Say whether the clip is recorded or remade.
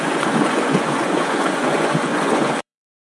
remade